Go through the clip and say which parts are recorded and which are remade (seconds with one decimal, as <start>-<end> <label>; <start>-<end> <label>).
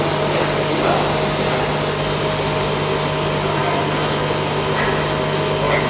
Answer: 0.0-5.9 recorded